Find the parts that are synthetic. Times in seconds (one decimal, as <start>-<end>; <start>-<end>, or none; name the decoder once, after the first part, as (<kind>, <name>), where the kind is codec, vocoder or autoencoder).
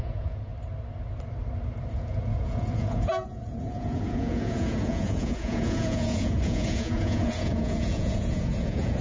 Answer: 0.0-0.5 (vocoder, Vocos); 1.9-9.0